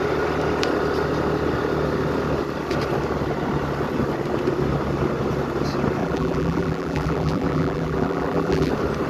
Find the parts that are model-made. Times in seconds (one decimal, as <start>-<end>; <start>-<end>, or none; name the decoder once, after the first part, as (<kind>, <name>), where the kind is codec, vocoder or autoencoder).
6.0-8.7 (vocoder, BigVGAN v2)